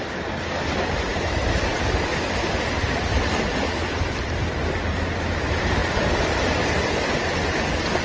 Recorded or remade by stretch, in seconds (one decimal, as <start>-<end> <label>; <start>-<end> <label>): 0.0-8.0 recorded